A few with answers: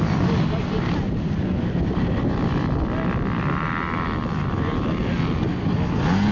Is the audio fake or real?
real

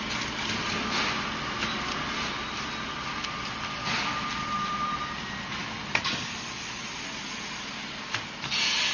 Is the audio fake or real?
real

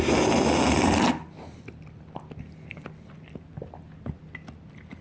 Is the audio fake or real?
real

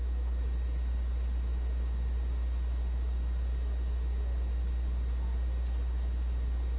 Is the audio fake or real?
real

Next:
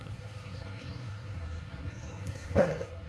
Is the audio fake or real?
fake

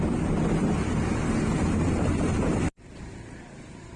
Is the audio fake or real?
real